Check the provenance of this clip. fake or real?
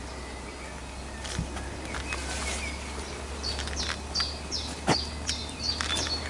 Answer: real